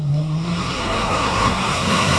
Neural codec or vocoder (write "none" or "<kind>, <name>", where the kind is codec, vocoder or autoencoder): codec, SNAC